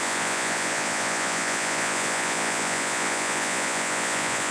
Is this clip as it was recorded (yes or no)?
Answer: no